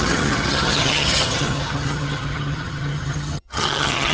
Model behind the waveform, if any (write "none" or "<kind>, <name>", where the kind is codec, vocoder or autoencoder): vocoder, HiFi-GAN